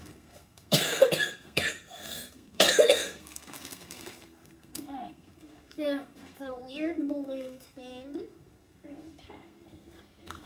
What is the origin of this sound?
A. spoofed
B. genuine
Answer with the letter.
A